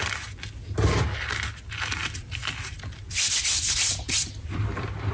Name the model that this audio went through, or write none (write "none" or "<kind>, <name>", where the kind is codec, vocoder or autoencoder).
none